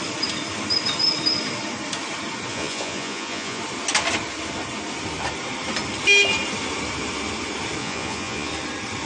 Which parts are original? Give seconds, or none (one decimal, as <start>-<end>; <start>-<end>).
0.0-2.5; 3.6-7.8; 8.5-9.1